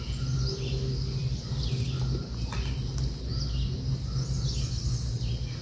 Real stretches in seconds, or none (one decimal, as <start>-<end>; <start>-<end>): 0.0-5.6